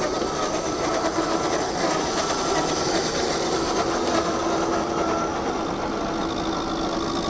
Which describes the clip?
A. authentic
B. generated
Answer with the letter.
A